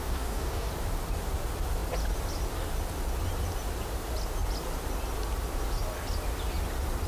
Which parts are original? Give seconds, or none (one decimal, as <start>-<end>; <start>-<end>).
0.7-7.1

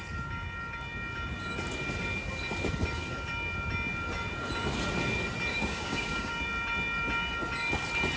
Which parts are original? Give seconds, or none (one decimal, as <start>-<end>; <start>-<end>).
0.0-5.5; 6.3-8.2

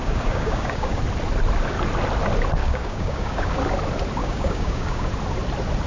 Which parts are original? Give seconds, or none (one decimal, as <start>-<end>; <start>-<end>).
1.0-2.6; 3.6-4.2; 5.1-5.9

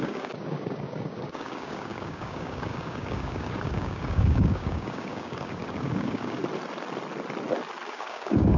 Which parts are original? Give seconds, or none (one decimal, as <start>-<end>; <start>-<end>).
6.4-7.9

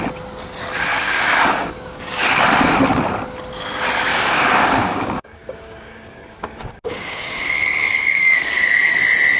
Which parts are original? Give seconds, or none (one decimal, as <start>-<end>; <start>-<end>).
0.0-0.9; 2.2-4.1; 9.0-9.4